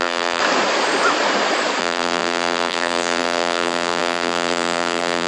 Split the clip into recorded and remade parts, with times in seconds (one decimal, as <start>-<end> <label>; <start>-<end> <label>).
0.0-0.4 remade; 0.4-1.8 recorded; 1.8-5.3 remade